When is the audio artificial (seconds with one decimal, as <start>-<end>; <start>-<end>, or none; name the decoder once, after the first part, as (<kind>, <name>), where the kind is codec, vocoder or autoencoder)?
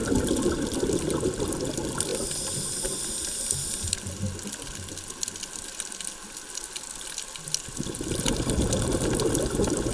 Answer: none